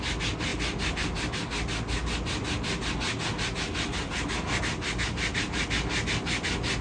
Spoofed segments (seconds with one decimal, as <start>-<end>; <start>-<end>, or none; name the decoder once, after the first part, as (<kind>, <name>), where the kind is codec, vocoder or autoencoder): none